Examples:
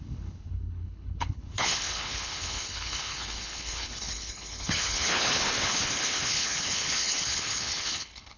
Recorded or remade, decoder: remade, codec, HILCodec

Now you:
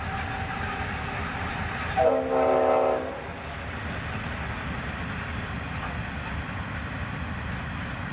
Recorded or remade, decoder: recorded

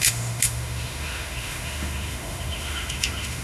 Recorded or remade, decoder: remade, autoencoder, DAC-VAE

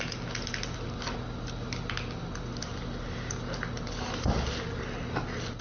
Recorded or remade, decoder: recorded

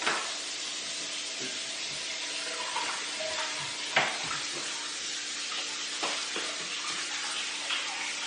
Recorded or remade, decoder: recorded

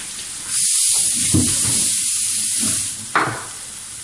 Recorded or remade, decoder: recorded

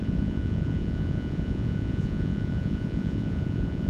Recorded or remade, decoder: remade, vocoder, Vocos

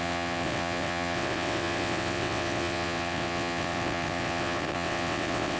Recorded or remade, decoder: remade, vocoder, WaveNeXt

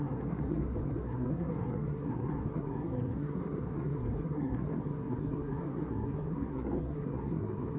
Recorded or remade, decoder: remade, codec, SNAC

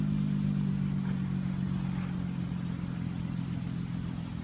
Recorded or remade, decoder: recorded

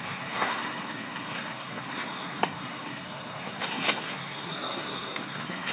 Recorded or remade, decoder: remade, codec, SNAC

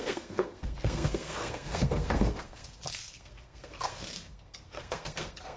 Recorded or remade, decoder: remade, codec, SNAC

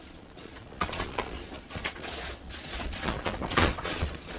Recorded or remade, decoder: remade, vocoder, Vocos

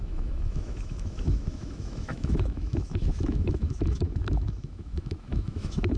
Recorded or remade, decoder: remade, autoencoder, DAC-VAE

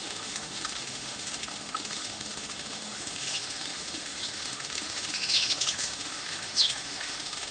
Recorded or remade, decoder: remade, autoencoder, DAC-VAE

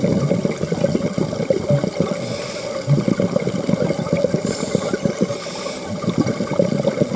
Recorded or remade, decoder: recorded